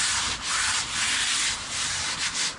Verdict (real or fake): real